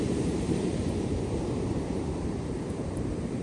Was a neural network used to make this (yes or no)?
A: yes